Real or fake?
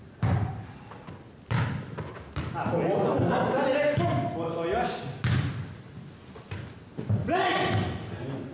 real